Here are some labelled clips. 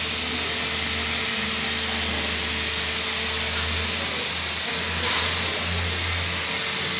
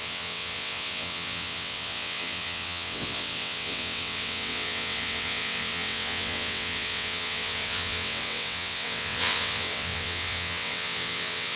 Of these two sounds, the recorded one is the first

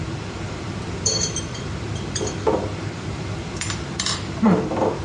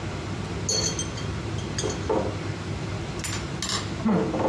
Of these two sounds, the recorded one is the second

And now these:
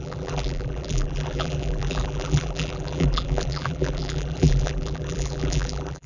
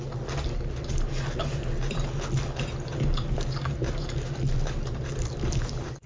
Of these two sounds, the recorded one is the second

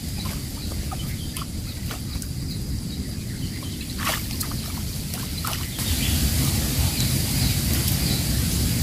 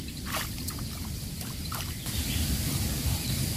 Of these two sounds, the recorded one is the first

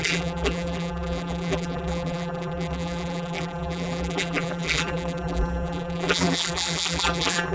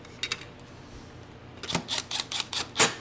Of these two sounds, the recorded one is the second